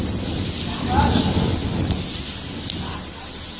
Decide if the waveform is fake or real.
real